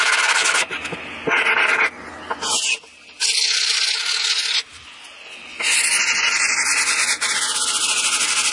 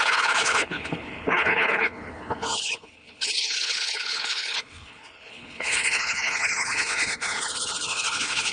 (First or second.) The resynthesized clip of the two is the second